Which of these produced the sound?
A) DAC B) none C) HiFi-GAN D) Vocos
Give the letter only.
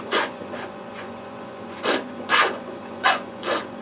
D